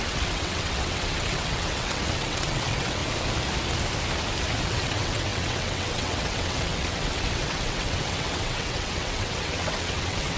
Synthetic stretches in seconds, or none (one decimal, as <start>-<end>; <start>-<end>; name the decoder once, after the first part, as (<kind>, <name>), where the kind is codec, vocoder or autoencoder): 0.0-3.0 (vocoder, WaveNeXt); 4.6-10.4